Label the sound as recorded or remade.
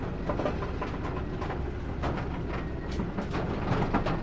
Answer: recorded